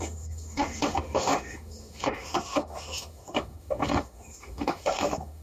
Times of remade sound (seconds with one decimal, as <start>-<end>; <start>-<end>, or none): 0.0-5.4